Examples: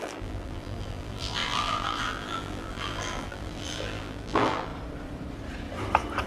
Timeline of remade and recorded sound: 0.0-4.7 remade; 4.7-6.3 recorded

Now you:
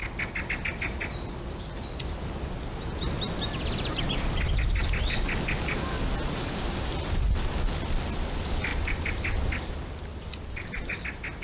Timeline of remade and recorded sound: 0.0-8.7 recorded; 8.7-9.5 remade; 9.5-11.4 recorded

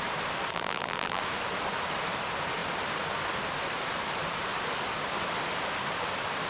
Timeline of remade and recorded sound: 0.0-0.5 recorded; 0.5-1.2 remade; 1.2-6.5 recorded

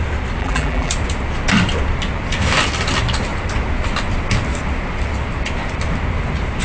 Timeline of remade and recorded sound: 0.0-0.4 recorded; 0.4-0.9 remade; 0.9-6.6 recorded